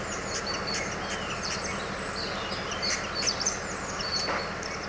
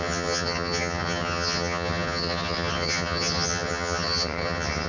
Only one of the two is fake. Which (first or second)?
second